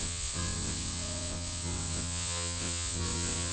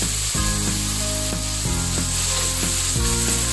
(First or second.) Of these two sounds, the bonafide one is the second